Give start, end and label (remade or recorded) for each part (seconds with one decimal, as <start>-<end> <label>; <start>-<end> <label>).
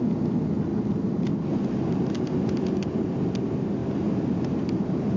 0.0-5.2 recorded